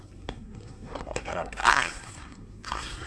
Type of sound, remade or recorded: remade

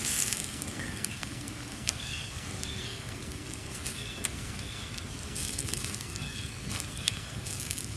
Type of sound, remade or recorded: remade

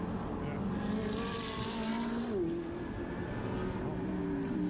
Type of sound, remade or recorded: recorded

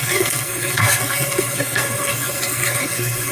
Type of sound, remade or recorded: remade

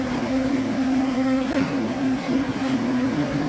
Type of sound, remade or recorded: remade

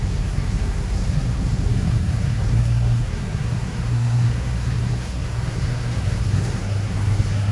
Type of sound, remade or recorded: remade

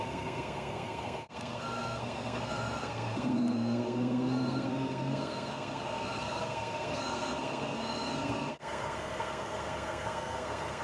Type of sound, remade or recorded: remade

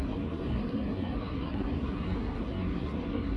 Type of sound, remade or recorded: remade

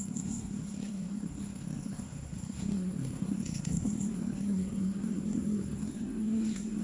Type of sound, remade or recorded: remade